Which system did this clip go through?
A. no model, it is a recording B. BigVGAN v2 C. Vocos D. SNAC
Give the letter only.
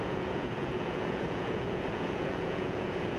C